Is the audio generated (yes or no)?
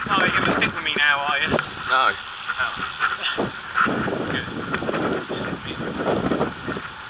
no